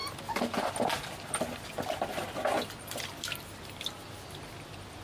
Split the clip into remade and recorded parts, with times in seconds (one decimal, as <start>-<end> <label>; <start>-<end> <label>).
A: 0.0-5.0 recorded